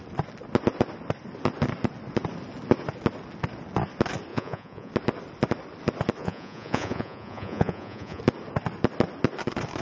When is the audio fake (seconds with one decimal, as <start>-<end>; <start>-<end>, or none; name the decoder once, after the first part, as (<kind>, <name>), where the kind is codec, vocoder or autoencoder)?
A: 4.3-4.9 (vocoder, Vocos); 6.2-8.2